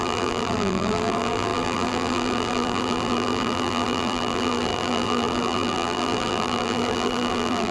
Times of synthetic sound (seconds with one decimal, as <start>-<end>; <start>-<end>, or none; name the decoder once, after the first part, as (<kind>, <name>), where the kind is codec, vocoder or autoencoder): 0.0-7.7 (vocoder, BigVGAN v2)